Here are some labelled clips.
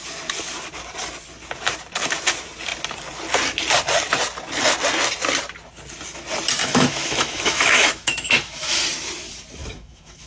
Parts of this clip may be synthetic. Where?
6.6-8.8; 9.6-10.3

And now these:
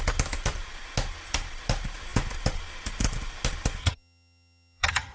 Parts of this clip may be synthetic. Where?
3.8-5.1

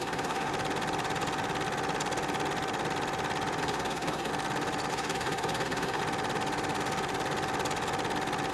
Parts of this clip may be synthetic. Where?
0.0-0.5; 3.6-4.3; 4.9-6.0

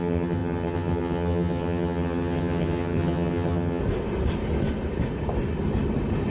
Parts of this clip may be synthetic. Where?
0.0-3.8